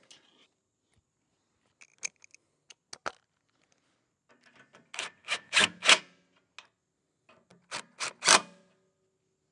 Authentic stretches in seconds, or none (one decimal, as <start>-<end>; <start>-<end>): 0.0-5.2; 6.0-9.5